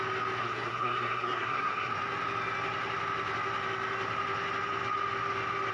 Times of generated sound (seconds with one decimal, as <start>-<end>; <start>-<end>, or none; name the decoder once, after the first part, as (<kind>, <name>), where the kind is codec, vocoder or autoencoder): 0.4-1.9 (codec, SNAC)